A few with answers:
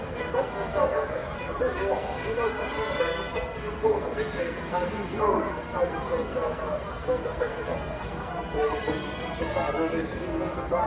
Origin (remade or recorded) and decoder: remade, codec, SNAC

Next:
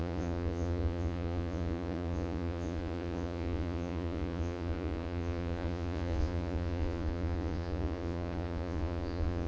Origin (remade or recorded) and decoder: remade, vocoder, Vocos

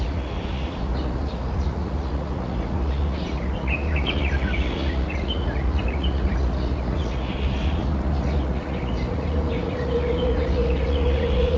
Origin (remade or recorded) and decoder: remade, vocoder, Vocos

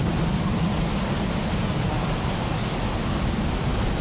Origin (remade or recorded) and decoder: recorded